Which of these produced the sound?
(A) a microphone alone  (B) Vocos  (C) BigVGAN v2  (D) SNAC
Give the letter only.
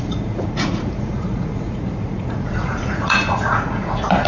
B